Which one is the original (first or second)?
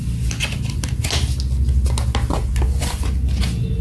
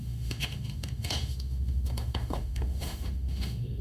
first